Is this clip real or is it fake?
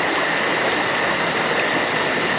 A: real